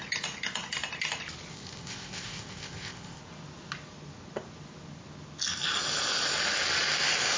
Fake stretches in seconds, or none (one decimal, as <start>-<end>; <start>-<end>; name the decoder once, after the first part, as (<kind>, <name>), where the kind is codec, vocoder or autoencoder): 1.5-3.2 (codec, ZipCodec)